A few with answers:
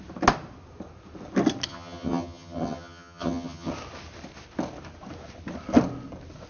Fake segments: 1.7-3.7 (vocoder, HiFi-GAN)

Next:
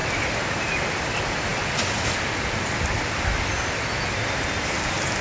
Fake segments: none